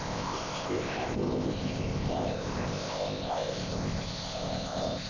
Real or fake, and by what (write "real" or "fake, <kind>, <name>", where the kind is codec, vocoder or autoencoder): fake, codec, ZipCodec